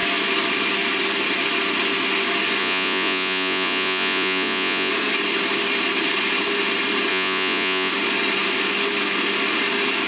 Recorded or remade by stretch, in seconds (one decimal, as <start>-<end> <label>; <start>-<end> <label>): 0.0-2.6 recorded; 2.6-4.9 remade; 4.9-7.1 recorded; 7.1-7.9 remade; 7.9-10.1 recorded

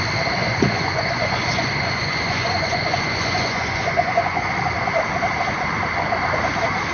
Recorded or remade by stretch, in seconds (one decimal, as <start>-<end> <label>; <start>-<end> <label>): 0.0-0.4 recorded; 0.4-4.5 remade; 4.5-6.9 recorded

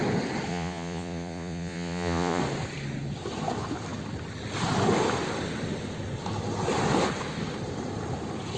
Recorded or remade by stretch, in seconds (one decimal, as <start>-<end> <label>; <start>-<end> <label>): 0.0-0.5 recorded; 0.5-2.4 remade; 2.4-8.6 recorded

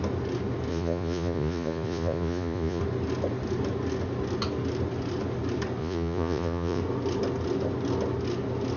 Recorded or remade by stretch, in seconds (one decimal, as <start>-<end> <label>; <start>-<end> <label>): 0.0-0.7 recorded; 0.7-2.8 remade; 2.8-5.8 recorded; 5.8-6.8 remade; 6.8-8.8 recorded